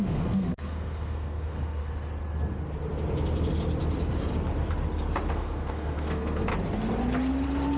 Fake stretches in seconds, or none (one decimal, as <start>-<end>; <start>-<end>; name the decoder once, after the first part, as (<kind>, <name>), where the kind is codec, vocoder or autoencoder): 0.0-1.8 (codec, SNAC); 5.3-6.5